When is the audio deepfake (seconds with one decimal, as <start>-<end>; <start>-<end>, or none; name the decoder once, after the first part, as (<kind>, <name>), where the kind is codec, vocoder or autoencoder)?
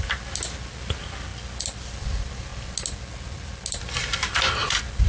none